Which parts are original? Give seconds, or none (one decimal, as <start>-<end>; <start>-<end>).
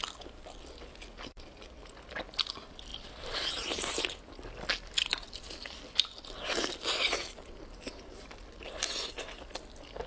0.0-2.9; 4.0-10.1